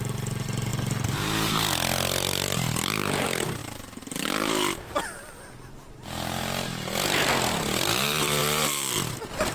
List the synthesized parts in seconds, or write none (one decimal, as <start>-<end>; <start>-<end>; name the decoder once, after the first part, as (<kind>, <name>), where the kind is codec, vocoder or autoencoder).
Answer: none